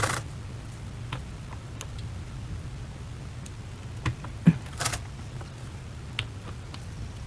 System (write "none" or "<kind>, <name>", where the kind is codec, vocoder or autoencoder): none